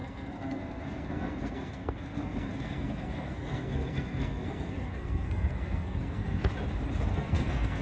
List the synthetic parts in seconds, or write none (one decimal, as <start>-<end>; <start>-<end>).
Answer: 0.0-6.5; 7.1-7.8